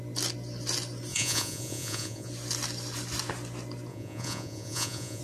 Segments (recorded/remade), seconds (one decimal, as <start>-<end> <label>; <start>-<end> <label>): 0.0-1.1 recorded; 1.1-2.3 remade; 2.3-3.9 recorded; 3.9-5.2 remade